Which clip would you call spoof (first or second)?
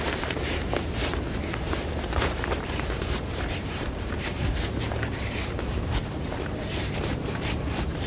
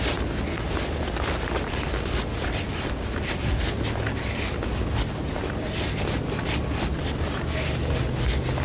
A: first